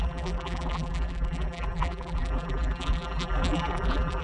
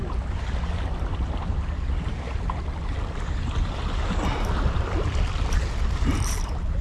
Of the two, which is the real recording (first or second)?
second